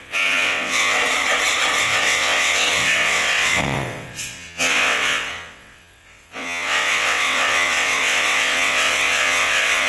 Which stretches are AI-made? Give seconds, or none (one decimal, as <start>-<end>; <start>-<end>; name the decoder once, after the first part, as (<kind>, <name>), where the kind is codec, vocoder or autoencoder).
0.0-1.0 (vocoder, WaveNeXt); 1.8-9.9

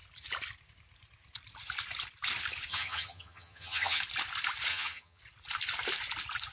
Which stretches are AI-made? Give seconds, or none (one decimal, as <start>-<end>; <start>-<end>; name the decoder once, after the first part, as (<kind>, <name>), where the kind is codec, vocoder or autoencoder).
2.7-4.0 (vocoder, HiFi-GAN); 4.7-5.2

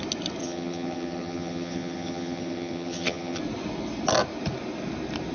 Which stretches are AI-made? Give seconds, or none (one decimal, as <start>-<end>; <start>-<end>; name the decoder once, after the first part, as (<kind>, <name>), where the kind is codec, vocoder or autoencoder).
0.4-3.4 (vocoder, HiFi-GAN)